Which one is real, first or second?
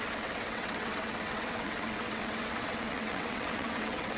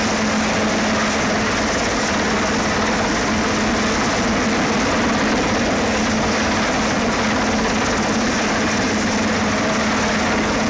second